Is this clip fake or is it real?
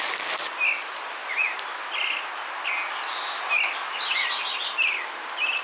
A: real